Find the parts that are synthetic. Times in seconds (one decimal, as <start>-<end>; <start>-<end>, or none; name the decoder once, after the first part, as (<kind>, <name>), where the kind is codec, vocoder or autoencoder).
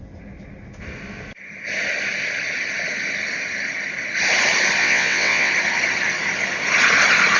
4.8-5.5 (vocoder, WaveNeXt)